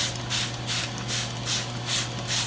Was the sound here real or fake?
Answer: real